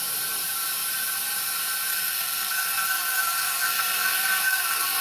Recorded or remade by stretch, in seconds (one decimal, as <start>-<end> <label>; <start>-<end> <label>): 0.0-1.9 recorded; 1.9-5.0 remade